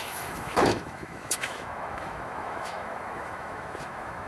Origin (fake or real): fake